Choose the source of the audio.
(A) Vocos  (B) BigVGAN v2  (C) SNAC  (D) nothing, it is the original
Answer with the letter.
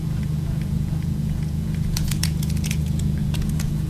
A